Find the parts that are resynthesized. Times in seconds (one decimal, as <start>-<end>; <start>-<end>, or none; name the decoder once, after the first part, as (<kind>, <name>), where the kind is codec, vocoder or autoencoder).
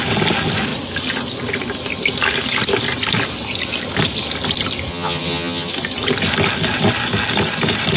4.9-5.7 (vocoder, HiFi-GAN)